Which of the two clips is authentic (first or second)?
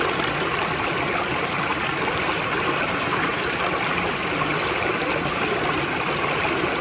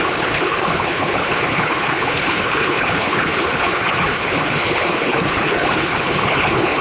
first